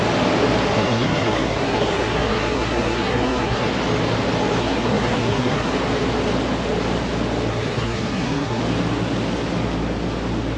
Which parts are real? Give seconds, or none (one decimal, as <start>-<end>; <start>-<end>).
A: 0.0-0.7; 3.7-4.6; 5.7-7.5; 8.6-10.6